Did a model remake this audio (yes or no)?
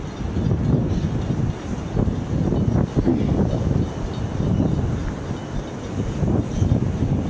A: no